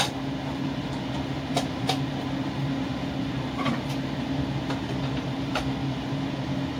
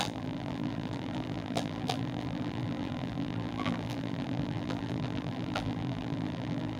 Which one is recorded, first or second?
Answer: first